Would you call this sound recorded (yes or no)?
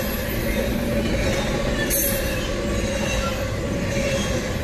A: yes